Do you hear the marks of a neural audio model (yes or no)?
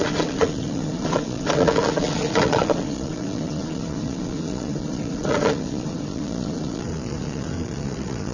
yes